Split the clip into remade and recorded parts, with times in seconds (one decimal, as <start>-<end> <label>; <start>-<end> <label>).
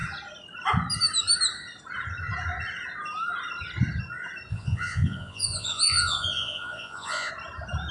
0.0-4.5 recorded; 4.5-7.3 remade; 7.3-7.9 recorded